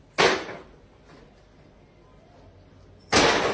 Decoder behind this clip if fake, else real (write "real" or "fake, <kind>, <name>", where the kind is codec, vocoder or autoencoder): real